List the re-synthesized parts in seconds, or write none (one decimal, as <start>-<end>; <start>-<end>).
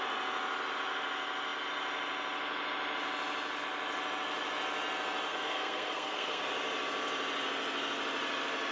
5.3-6.4